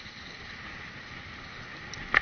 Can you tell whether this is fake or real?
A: real